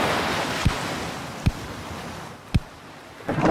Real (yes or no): yes